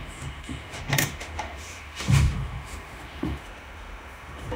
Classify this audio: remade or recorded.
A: remade